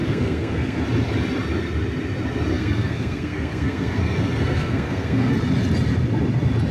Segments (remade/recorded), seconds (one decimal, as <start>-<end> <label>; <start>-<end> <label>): 0.0-0.8 remade; 0.8-2.5 recorded; 2.5-5.3 remade; 5.3-6.7 recorded